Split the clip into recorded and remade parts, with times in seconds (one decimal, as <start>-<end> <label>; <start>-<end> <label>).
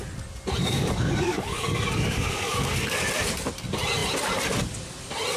0.0-0.6 recorded; 0.6-3.1 remade; 3.1-5.4 recorded